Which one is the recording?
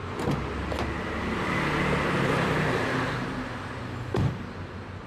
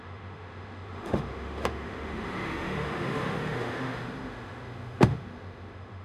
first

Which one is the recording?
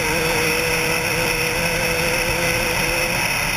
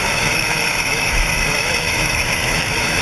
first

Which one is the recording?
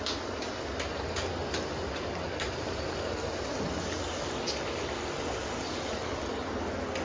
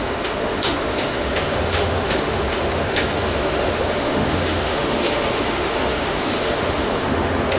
first